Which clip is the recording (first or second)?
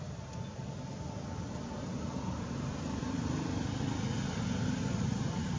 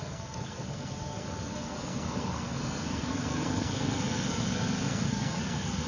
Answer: first